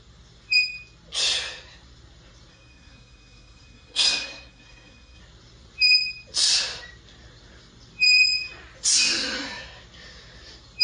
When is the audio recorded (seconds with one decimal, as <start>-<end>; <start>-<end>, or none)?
0.0-2.5; 5.2-10.8